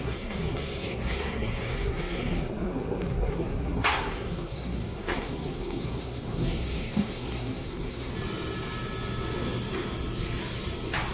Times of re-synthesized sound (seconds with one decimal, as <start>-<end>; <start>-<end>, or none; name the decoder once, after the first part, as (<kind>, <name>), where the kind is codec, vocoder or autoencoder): 0.0-8.1 (codec, SNAC)